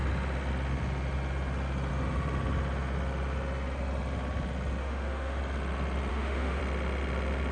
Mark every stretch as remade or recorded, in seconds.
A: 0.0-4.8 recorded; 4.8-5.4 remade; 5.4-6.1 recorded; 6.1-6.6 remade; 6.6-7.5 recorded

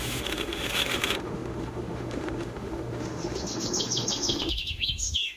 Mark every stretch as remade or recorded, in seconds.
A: 0.0-5.4 remade

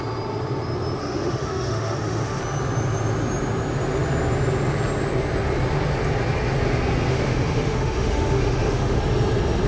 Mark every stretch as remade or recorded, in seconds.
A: 0.0-1.0 recorded; 1.0-2.4 remade; 2.4-7.1 recorded; 7.1-9.0 remade; 9.0-9.7 recorded

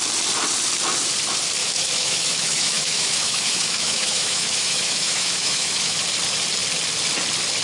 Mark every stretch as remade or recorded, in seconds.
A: 0.0-1.6 recorded; 1.6-6.0 remade; 6.0-7.6 recorded